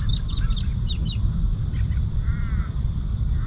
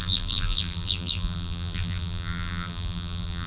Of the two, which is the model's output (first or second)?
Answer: second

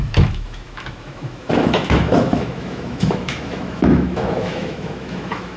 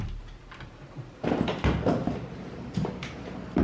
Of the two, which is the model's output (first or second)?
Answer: first